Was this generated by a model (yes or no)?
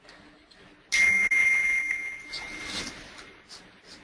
no